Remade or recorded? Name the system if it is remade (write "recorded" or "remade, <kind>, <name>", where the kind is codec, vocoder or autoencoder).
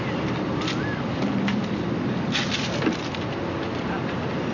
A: recorded